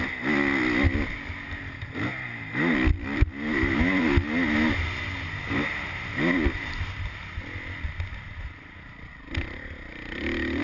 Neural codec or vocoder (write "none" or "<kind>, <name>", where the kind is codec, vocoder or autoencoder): none